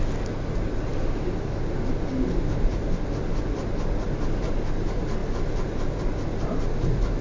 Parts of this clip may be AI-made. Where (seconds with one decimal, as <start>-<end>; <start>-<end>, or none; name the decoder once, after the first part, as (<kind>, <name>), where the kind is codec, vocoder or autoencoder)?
none